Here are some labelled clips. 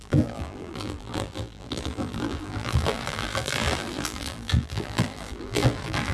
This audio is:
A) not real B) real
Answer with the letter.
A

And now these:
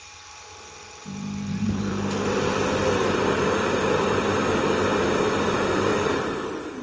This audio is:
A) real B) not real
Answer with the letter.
B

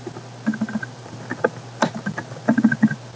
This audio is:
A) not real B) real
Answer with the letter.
B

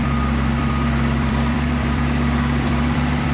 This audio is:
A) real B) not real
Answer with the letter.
B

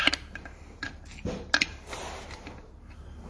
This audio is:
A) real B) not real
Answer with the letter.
B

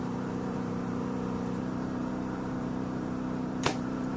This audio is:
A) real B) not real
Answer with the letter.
B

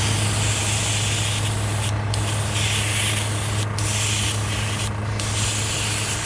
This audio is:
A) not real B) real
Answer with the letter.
B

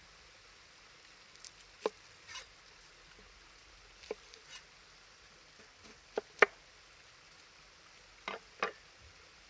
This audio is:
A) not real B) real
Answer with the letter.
B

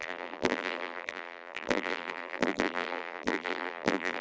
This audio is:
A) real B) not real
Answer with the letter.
B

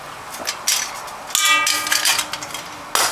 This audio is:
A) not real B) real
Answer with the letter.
B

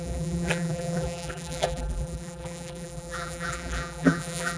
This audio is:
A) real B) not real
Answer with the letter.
B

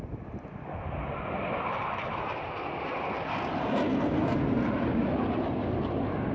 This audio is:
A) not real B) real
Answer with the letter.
B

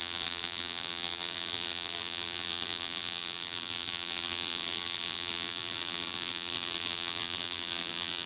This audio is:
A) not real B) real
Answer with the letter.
A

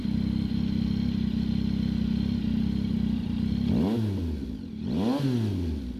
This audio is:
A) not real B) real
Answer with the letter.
B